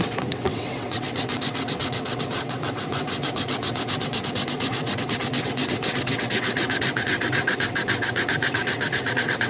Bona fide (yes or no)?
no